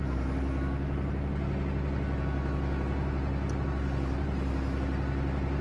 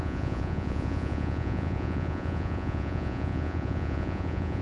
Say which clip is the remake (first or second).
second